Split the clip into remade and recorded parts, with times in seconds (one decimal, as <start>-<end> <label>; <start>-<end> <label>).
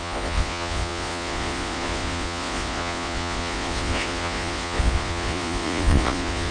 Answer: 0.0-6.5 remade